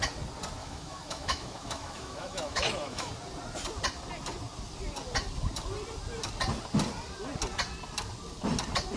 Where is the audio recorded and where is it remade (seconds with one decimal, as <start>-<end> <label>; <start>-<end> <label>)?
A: 0.0-0.6 recorded; 0.6-3.1 remade; 3.1-9.0 recorded